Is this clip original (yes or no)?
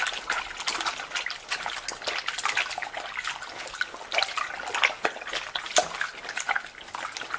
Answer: yes